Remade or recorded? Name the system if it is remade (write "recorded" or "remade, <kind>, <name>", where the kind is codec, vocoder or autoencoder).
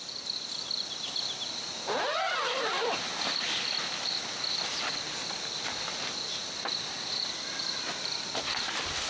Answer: recorded